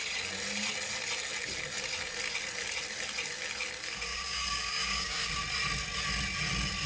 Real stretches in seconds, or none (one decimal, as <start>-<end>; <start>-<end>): 0.0-4.1; 5.3-6.9